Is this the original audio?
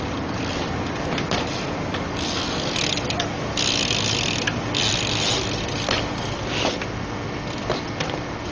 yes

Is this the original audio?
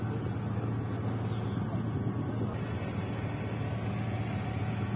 yes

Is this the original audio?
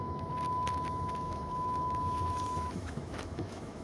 no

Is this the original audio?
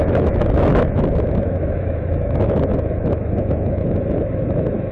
no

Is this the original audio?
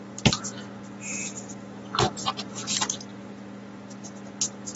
yes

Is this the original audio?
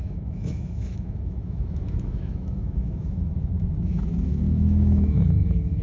no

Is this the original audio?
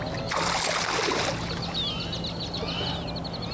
yes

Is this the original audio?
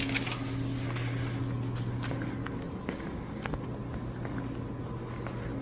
yes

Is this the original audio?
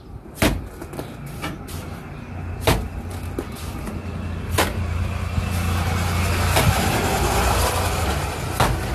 yes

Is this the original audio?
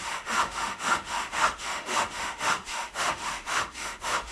no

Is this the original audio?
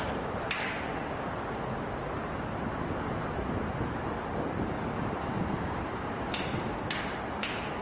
yes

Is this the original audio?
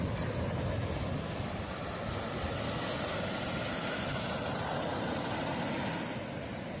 yes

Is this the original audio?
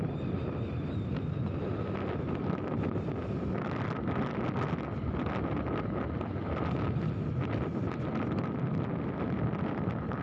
yes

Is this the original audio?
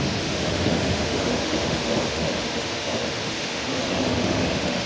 no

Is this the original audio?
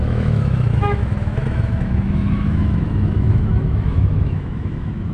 no